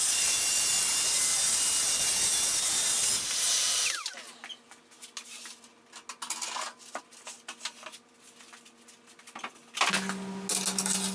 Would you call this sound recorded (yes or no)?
yes